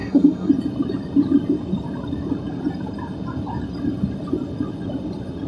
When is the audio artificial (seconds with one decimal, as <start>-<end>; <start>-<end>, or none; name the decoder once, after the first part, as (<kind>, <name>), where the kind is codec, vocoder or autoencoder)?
0.0-0.5 (codec, SNAC)